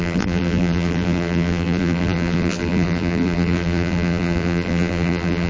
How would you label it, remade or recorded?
remade